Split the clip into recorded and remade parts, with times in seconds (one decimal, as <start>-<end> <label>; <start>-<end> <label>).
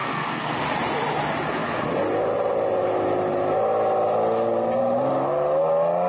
0.0-0.6 remade; 0.6-6.1 recorded